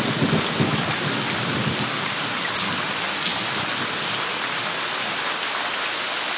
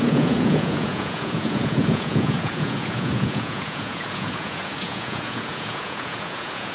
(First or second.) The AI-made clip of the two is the second